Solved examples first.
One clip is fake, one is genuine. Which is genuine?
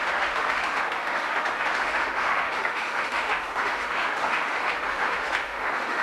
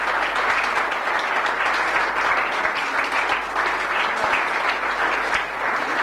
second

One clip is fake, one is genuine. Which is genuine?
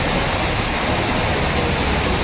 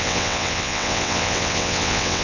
first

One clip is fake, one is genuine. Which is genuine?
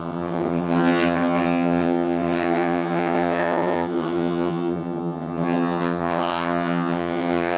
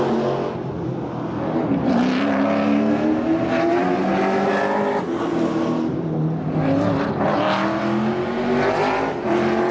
second